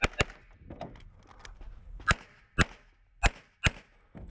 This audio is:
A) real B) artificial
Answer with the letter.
A